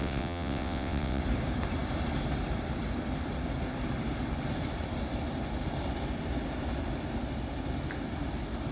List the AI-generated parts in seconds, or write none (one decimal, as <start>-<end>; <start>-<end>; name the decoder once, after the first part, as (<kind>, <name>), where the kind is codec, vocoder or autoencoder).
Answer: 0.0-1.2 (vocoder, WaveNeXt)